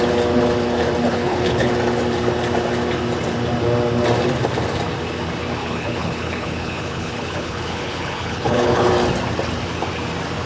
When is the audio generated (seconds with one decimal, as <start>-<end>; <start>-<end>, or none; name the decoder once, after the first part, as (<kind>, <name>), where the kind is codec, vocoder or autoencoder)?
1.1-1.7 (codec, HILCodec); 5.6-8.9